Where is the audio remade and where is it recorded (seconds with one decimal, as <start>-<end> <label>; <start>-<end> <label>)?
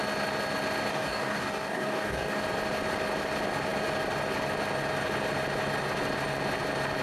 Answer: 0.0-0.9 recorded; 0.9-2.4 remade; 2.4-7.0 recorded